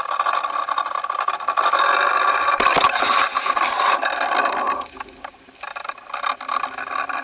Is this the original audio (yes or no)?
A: yes